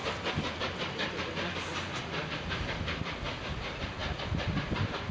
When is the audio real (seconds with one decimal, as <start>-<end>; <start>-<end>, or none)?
0.0-0.6